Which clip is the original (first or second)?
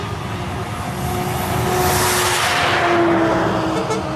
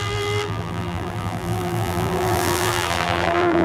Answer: first